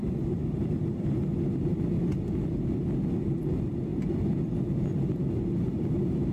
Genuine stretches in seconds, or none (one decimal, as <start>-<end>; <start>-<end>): 1.4-3.9; 5.1-6.3